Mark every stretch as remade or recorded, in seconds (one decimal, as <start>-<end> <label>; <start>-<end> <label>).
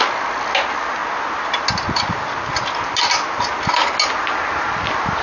0.0-5.2 recorded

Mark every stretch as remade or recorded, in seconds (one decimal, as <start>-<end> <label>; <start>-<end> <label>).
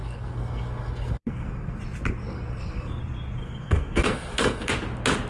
0.0-1.8 remade; 1.8-2.2 recorded; 2.2-3.0 remade; 3.0-3.4 recorded; 3.4-4.7 remade; 4.7-5.3 recorded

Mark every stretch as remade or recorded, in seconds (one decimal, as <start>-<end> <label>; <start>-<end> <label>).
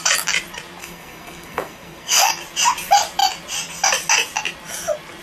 0.0-0.8 recorded; 0.8-2.3 remade; 2.3-5.2 recorded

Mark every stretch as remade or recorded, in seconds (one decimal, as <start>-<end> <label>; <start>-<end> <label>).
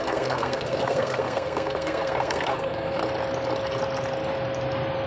0.0-3.0 remade; 3.0-5.1 recorded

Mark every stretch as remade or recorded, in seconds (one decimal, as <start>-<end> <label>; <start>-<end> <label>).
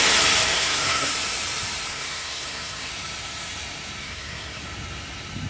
0.0-0.5 recorded; 0.5-1.1 remade; 1.1-1.9 recorded; 1.9-2.9 remade; 2.9-4.0 recorded; 4.0-4.6 remade; 4.6-5.5 recorded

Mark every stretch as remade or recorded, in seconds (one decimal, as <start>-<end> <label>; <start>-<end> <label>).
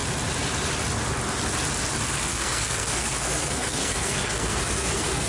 0.0-2.3 recorded; 2.3-5.3 remade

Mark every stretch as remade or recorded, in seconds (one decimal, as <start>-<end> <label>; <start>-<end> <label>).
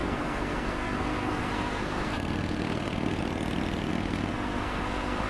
0.0-3.2 remade; 3.2-3.9 recorded; 3.9-5.3 remade